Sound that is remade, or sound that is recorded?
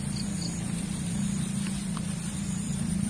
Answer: remade